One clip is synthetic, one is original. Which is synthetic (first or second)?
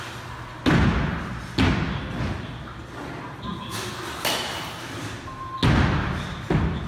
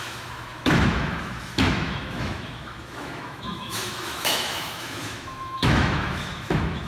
second